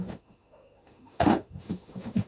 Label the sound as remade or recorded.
remade